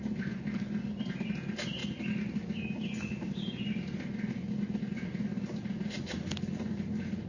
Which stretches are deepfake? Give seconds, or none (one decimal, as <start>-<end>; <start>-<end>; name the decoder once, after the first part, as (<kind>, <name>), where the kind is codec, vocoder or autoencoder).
none